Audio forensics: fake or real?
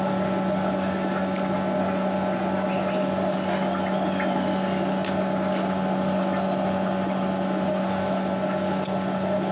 real